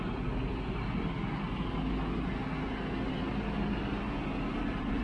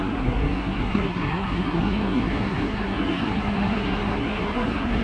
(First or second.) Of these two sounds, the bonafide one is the first